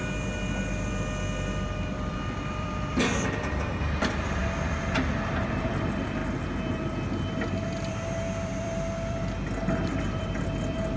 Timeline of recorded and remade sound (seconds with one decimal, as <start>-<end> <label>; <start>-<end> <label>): 0.0-1.7 recorded; 1.7-6.2 remade; 6.2-7.9 recorded; 7.9-11.0 remade